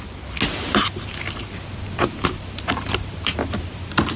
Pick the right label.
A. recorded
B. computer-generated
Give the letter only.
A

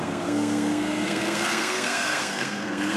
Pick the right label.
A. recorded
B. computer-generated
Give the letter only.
B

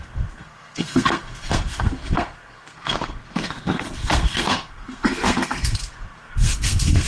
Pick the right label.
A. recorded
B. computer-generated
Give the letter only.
B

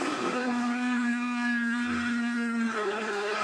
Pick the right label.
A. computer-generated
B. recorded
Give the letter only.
A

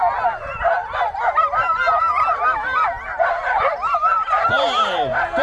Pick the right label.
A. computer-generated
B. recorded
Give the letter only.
B